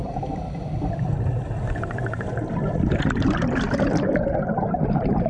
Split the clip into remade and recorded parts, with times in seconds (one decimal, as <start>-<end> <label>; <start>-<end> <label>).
0.0-2.6 recorded; 2.6-5.3 remade

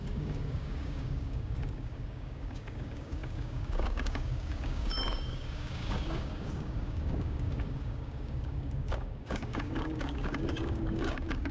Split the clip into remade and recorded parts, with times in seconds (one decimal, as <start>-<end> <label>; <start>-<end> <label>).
0.0-11.5 remade

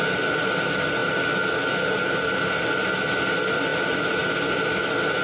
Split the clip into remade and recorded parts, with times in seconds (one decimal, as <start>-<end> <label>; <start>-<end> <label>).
0.0-5.2 recorded

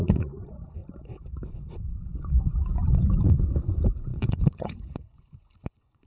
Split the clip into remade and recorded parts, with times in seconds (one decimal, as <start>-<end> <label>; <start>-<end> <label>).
0.0-0.8 remade; 0.8-1.8 recorded; 1.8-6.1 remade

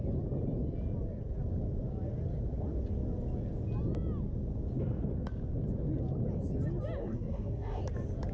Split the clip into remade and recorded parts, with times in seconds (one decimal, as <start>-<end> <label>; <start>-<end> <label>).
0.0-7.0 recorded; 7.0-7.8 remade; 7.8-8.3 recorded

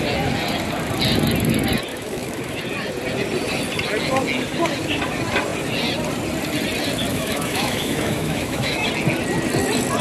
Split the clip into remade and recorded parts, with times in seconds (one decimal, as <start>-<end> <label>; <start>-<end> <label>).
0.0-1.9 recorded; 1.9-2.6 remade; 2.6-7.1 recorded; 7.1-8.9 remade; 8.9-10.0 recorded